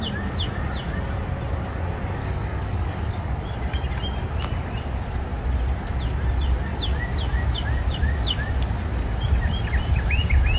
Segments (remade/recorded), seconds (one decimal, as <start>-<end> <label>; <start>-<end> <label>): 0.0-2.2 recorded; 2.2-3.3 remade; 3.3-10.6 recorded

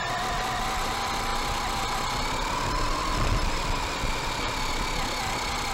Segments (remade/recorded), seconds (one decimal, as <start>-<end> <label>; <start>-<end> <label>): 0.0-5.7 recorded

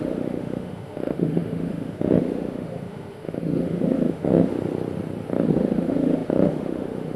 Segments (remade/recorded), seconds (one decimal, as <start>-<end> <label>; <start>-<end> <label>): 0.0-4.5 remade; 4.5-5.5 recorded; 5.5-7.2 remade